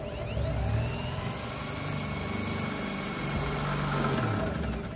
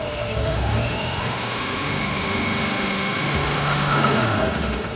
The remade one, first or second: second